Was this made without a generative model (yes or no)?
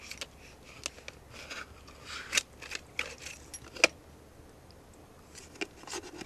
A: yes